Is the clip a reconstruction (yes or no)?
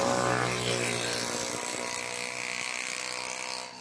no